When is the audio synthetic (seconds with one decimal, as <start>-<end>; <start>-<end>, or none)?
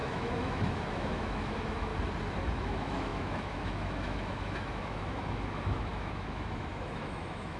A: 0.0-1.9; 2.5-7.6